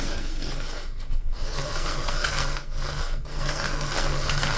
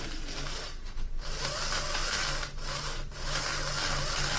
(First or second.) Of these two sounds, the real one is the second